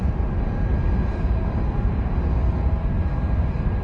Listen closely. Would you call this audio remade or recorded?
recorded